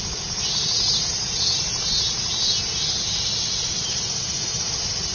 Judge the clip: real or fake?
real